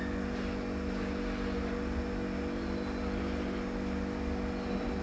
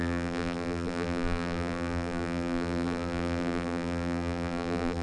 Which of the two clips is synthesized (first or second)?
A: second